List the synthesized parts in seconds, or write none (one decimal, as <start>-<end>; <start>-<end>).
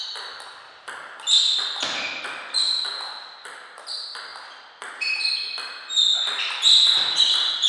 none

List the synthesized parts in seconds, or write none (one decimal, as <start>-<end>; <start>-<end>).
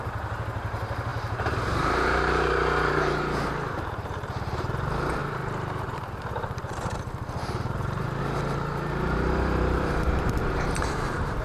0.0-11.4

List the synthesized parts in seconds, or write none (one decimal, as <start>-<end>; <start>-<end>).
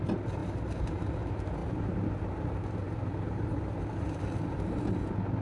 0.4-1.0; 1.6-4.2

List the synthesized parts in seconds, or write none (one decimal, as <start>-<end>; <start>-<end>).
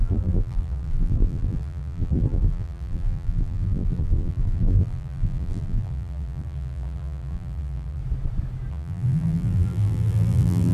0.0-8.0; 8.7-10.7